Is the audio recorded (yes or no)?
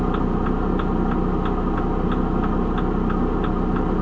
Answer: yes